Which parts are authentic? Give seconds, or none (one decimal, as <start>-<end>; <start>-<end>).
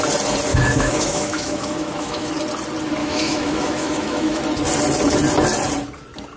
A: 0.0-0.5; 2.3-3.0; 4.4-6.4